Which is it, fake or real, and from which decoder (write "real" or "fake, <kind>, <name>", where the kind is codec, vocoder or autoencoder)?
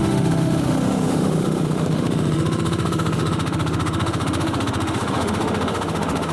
fake, autoencoder, DAC-VAE